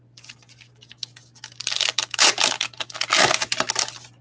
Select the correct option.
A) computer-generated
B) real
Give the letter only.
B